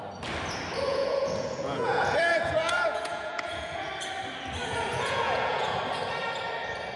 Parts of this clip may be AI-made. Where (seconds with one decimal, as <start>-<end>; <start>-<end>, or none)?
0.9-3.9; 4.6-5.8